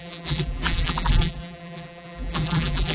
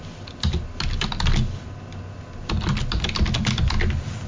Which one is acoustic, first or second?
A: second